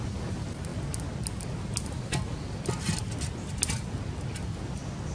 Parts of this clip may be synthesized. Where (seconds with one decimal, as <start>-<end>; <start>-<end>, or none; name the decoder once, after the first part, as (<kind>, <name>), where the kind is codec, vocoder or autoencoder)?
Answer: none

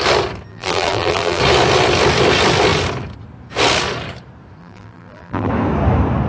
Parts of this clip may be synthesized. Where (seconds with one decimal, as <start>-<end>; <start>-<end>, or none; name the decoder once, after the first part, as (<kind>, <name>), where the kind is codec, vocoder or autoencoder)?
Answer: 0.5-1.4 (vocoder, BigVGAN v2); 4.6-5.5